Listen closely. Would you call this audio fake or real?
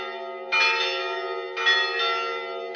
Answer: real